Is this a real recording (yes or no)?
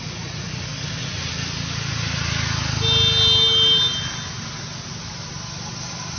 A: yes